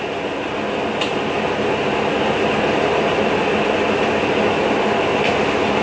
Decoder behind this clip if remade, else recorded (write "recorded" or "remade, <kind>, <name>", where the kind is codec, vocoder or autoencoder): recorded